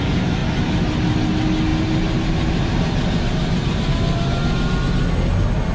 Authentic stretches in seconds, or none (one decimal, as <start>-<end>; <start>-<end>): 0.0-5.7